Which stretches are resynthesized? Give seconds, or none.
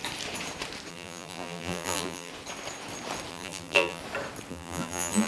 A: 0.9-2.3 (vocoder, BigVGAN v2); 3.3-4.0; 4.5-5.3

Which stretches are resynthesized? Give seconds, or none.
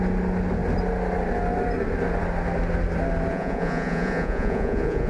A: 3.3-5.1 (vocoder, Vocos)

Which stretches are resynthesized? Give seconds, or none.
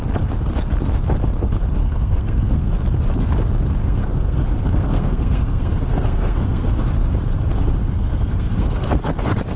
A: 1.8-2.7 (codec, SNAC); 3.8-6.7; 7.8-9.0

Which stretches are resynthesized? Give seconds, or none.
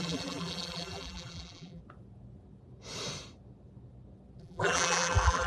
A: 0.0-1.8 (vocoder, BigVGAN v2); 4.4-5.5